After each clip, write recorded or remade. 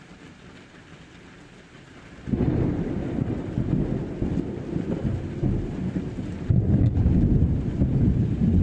recorded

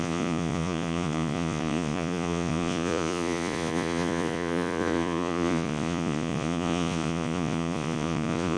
remade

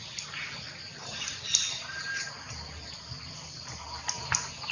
recorded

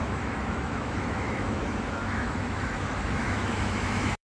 remade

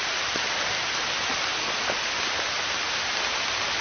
recorded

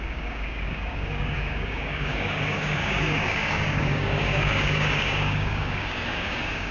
remade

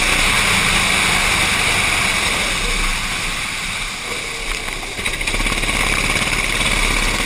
recorded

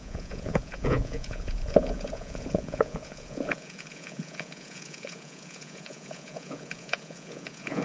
remade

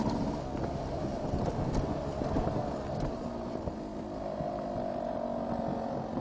recorded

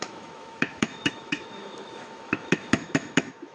remade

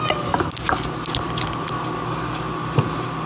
recorded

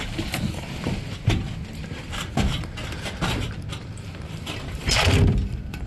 recorded